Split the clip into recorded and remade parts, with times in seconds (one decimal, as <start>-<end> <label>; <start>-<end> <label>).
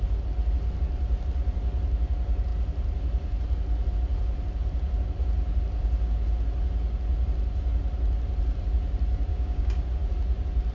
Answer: 0.0-9.3 recorded; 9.3-9.9 remade; 9.9-10.7 recorded